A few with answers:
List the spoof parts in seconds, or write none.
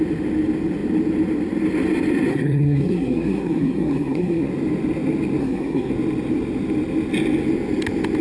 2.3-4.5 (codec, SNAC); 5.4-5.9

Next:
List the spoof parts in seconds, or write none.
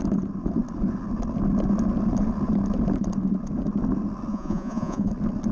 4.3-5.1 (vocoder, Vocos)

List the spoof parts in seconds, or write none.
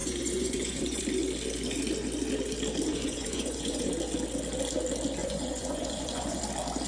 0.0-1.0 (vocoder, Vocos); 2.9-3.9; 5.2-6.4